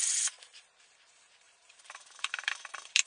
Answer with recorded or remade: remade